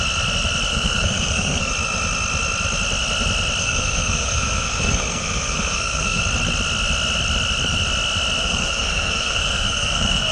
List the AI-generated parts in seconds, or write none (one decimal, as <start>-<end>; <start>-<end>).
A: 0.7-1.7; 3.6-6.2; 8.4-10.3